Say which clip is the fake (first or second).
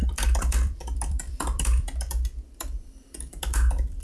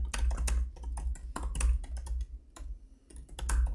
first